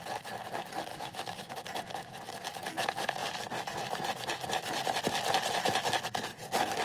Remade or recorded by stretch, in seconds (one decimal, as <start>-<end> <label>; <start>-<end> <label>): 0.0-0.9 recorded; 0.9-1.5 remade; 1.5-6.8 recorded